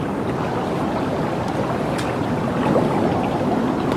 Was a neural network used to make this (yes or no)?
no